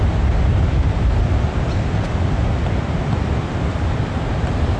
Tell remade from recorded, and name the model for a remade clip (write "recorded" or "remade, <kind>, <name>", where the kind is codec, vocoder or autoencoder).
recorded